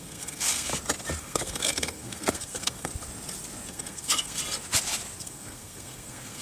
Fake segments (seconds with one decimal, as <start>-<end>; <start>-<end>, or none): 0.0-0.7; 1.2-2.9; 3.7-4.4; 5.2-6.4